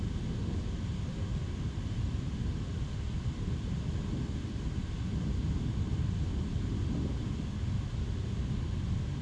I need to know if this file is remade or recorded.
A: recorded